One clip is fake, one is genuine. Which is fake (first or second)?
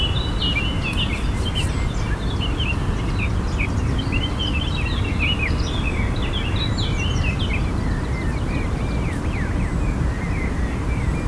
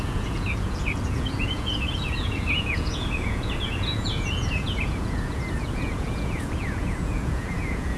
second